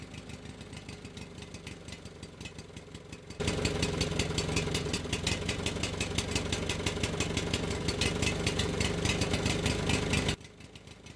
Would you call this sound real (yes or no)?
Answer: yes